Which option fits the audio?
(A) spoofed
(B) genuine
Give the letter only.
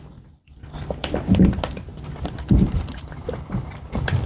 B